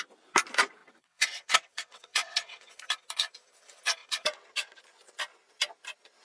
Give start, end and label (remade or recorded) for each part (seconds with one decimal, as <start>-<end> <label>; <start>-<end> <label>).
0.0-0.8 recorded; 0.8-2.7 remade; 2.7-4.0 recorded; 4.0-4.8 remade; 4.8-6.2 recorded